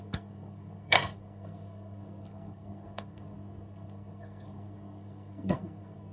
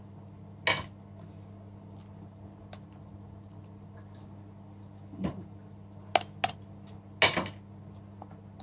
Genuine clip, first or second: second